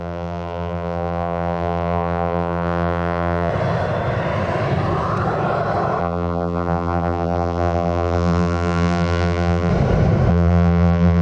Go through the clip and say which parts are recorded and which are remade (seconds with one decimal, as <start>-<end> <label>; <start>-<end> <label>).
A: 0.0-3.5 remade; 3.5-6.0 recorded; 6.0-9.7 remade; 9.7-10.3 recorded; 10.3-11.2 remade